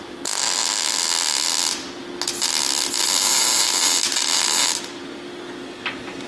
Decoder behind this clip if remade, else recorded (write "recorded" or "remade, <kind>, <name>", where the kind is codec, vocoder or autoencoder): recorded